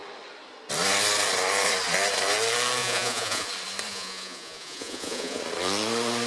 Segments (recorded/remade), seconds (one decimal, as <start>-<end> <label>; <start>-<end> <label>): 0.0-2.8 recorded; 2.8-3.5 remade; 3.5-3.9 recorded; 3.9-5.4 remade; 5.4-6.3 recorded